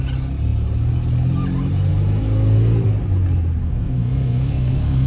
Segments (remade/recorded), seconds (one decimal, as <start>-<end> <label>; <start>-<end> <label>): 0.0-3.6 recorded; 3.6-5.1 remade